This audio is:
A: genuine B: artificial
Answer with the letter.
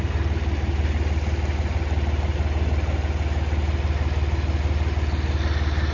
A